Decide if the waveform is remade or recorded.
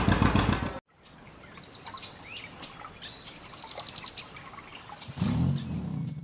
recorded